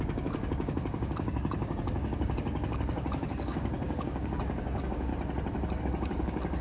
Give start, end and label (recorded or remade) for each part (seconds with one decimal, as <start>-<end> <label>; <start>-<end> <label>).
0.0-5.1 remade; 5.1-5.8 recorded; 5.8-6.6 remade